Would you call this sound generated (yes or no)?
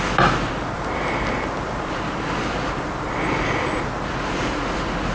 no